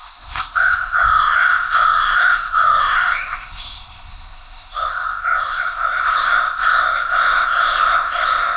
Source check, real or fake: fake